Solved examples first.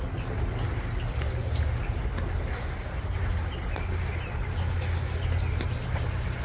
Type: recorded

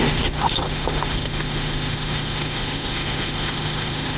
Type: remade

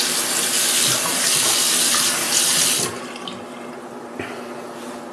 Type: recorded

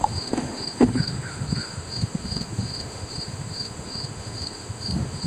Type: remade